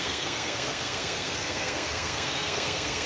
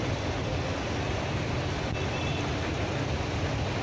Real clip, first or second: second